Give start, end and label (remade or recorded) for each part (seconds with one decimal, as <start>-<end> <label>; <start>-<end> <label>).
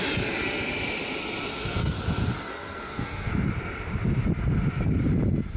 0.0-1.5 recorded; 1.5-2.0 remade; 2.0-2.5 recorded; 2.5-3.3 remade; 3.3-5.6 recorded